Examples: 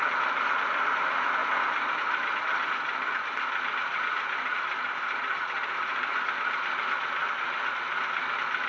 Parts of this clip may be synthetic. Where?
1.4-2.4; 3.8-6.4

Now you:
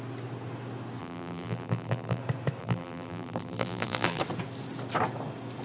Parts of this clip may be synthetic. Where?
1.0-2.2; 2.6-4.2

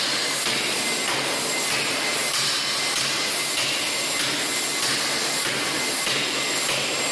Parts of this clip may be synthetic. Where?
none

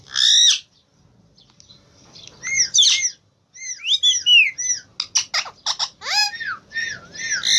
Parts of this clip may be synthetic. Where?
none

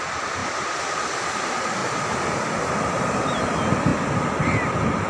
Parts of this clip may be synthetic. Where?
none

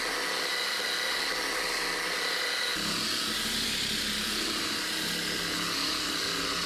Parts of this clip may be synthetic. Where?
none